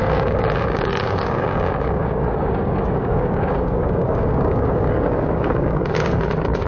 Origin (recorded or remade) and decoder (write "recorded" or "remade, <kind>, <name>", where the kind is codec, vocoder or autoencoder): remade, codec, DAC